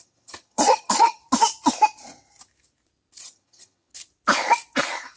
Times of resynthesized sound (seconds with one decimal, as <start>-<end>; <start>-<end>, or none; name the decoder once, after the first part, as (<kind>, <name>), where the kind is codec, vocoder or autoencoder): 0.0-1.2 (vocoder, HiFi-GAN); 3.2-3.9